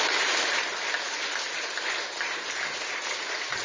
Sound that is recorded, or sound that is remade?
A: recorded